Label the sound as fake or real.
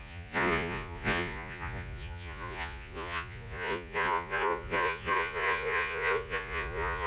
fake